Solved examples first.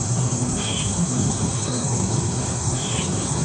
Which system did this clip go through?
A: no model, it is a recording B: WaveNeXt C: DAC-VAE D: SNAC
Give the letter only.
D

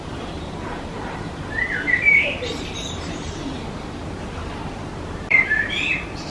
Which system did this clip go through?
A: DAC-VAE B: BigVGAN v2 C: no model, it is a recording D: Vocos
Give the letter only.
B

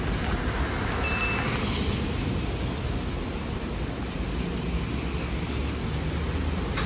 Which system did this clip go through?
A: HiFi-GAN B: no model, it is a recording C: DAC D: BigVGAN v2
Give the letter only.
B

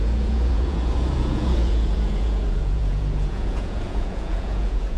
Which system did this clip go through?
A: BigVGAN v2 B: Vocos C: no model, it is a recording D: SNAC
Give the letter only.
B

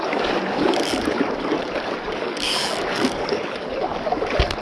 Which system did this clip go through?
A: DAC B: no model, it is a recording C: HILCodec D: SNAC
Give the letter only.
A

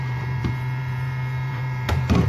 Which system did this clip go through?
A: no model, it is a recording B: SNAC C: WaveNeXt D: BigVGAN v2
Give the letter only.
D